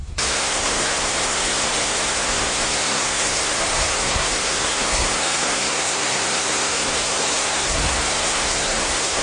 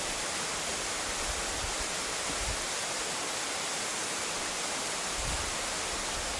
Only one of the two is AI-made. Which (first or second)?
first